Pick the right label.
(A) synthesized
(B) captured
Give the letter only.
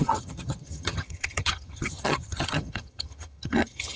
A